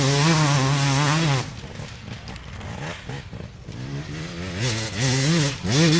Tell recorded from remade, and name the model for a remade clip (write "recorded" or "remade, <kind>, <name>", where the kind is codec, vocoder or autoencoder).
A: recorded